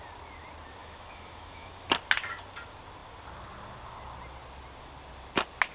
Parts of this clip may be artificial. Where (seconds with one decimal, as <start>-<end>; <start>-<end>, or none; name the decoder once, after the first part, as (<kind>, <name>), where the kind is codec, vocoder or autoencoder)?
0.8-1.9 (autoencoder, DAC-VAE)